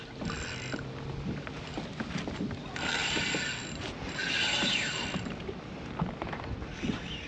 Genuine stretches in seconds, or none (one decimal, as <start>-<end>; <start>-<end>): 0.0-4.2; 5.7-7.3